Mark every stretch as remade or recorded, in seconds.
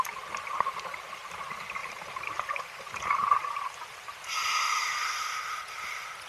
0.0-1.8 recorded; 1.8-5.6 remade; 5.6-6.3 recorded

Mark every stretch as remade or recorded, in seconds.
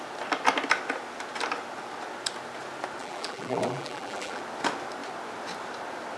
0.0-3.0 recorded; 3.0-4.4 remade; 4.4-6.2 recorded